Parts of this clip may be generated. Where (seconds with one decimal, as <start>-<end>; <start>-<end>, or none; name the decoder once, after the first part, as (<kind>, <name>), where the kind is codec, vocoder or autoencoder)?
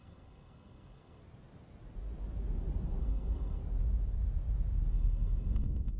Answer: 0.0-1.2 (codec, SNAC); 3.0-3.6; 4.9-6.0